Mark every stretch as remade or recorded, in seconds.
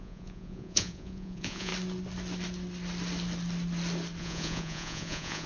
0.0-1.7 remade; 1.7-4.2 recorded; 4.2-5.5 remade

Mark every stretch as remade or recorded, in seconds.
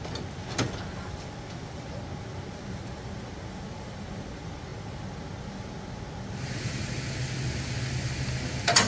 0.0-8.9 recorded